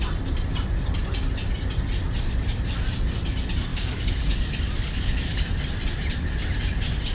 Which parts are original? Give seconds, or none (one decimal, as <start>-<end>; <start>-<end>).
0.0-3.7; 5.4-7.1

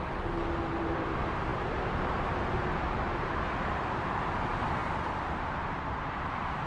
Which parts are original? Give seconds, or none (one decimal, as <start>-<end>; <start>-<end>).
0.0-6.7